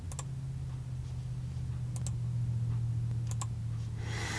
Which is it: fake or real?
real